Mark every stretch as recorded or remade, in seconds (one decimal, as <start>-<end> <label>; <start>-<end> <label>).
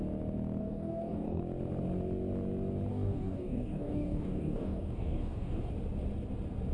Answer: 0.0-0.6 recorded; 0.6-1.4 remade; 1.4-2.9 recorded; 2.9-5.7 remade; 5.7-6.7 recorded